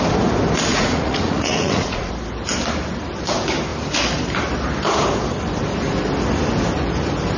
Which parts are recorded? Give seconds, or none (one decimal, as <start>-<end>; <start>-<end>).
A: 0.0-0.7; 2.1-7.4